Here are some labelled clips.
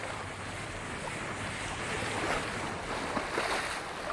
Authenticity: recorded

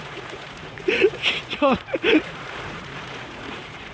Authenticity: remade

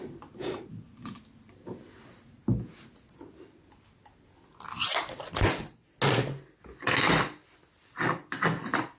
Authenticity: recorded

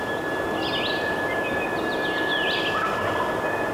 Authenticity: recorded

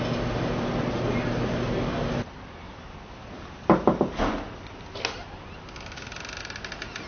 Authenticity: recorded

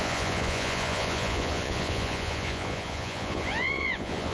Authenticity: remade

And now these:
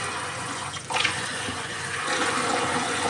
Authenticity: remade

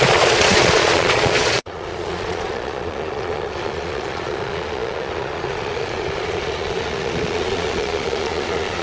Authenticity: remade